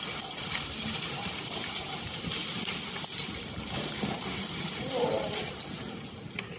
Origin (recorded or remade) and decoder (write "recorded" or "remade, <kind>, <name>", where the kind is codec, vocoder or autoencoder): recorded